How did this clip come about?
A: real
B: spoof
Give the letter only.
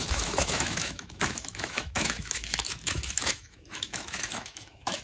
B